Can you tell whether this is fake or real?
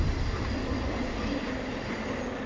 real